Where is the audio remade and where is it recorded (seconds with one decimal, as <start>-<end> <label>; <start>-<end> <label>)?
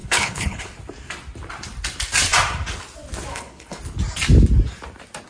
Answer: 0.0-0.7 remade; 0.7-3.3 recorded; 3.3-3.8 remade; 3.8-5.3 recorded